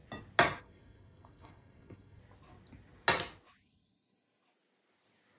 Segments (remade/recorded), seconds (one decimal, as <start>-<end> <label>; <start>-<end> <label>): 0.0-0.6 recorded; 0.6-2.2 remade; 2.2-5.4 recorded